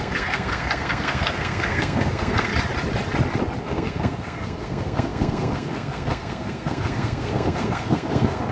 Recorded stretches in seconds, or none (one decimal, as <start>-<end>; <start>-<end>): 2.5-3.6